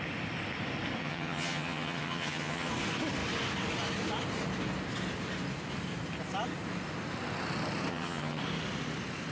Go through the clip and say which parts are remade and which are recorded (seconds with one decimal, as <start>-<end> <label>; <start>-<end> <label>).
0.0-1.0 recorded; 1.0-2.7 remade; 2.7-7.9 recorded; 7.9-8.4 remade; 8.4-9.3 recorded